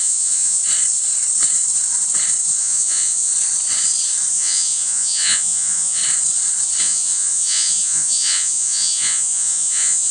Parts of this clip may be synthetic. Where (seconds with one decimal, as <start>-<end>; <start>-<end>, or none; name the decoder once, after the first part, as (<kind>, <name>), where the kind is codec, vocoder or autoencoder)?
0.0-0.6 (vocoder, Vocos); 2.6-3.3; 4.3-6.0; 6.8-10.1